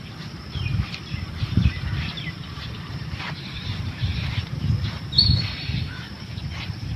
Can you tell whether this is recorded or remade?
remade